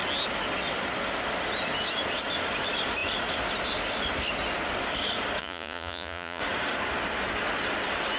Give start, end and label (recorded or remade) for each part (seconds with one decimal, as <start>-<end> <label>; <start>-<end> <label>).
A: 0.0-5.4 recorded; 5.4-6.4 remade; 6.4-8.2 recorded